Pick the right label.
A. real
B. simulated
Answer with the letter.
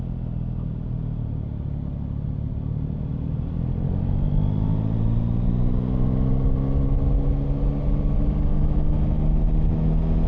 A